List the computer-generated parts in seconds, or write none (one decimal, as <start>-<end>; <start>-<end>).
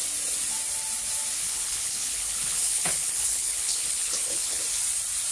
1.4-4.6